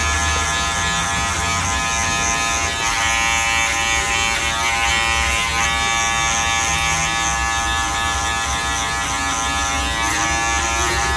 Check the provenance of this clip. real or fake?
real